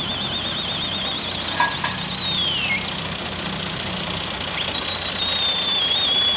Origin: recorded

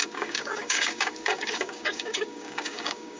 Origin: remade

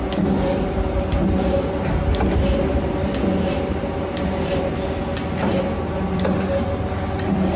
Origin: recorded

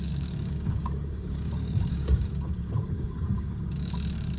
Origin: remade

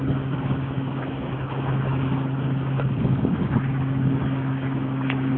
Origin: remade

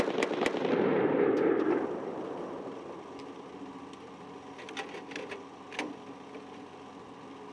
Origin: recorded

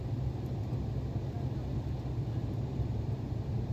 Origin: recorded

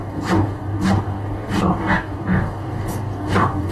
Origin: remade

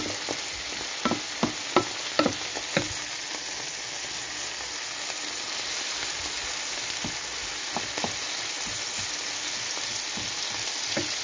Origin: recorded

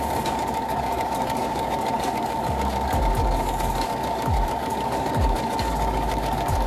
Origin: remade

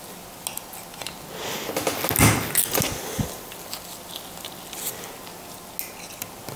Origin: recorded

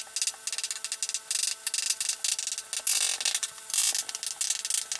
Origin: recorded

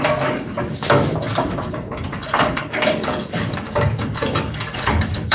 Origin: remade